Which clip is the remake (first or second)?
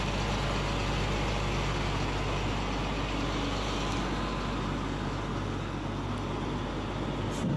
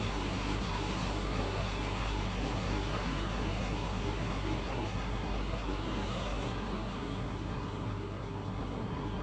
second